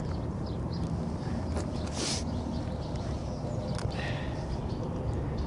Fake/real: real